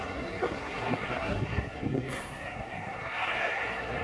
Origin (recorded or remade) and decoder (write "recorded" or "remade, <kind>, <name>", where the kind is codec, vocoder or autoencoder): remade, codec, SNAC